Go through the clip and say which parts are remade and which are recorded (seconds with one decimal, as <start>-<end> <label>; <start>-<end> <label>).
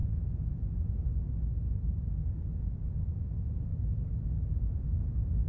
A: 0.0-3.3 recorded; 3.3-3.7 remade; 3.7-5.1 recorded; 5.1-5.5 remade